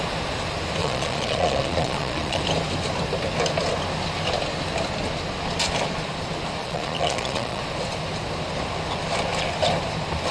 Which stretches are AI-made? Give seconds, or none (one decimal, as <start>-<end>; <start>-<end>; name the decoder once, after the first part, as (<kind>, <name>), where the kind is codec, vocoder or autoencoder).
0.8-2.4 (vocoder, Vocos); 6.6-7.6